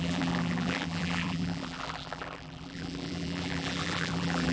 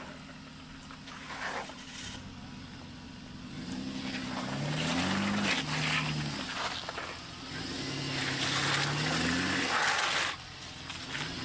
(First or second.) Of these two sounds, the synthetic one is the first